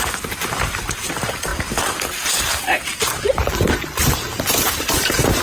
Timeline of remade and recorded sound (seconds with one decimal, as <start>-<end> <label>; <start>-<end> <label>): 0.0-1.5 remade; 1.5-2.4 recorded; 2.4-5.4 remade